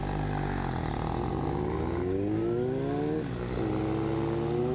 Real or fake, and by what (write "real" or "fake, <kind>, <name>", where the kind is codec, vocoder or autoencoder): real